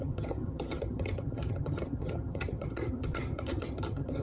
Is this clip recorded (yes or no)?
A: no